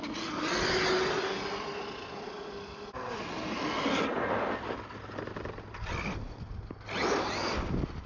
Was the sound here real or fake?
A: real